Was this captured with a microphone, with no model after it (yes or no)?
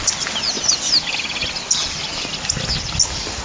yes